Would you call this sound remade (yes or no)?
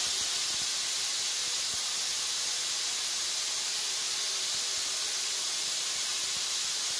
no